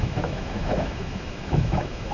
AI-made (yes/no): yes